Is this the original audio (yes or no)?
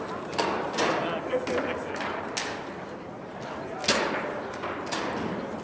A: yes